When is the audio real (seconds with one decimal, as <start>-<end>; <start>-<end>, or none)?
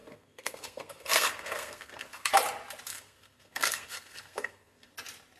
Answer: 2.3-2.9; 4.9-5.4